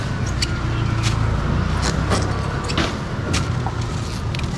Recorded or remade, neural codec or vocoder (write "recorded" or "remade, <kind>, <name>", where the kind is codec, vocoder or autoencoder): recorded